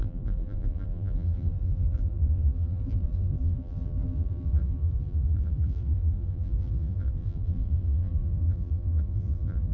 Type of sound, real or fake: fake